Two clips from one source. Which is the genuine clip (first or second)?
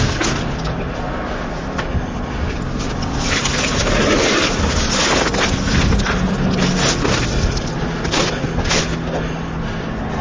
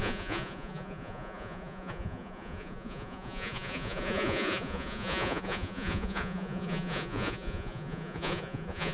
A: first